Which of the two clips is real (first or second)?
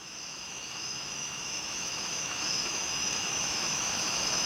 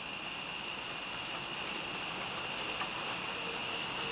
second